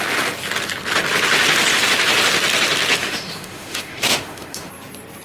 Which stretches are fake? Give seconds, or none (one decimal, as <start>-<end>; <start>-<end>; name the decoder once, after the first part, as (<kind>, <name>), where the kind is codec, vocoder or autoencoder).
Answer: 3.0-4.7 (autoencoder, DAC-VAE)